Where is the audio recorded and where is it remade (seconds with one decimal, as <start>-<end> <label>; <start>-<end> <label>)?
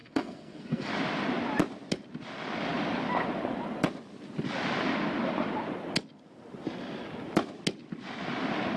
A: 0.0-0.9 remade; 0.9-8.8 recorded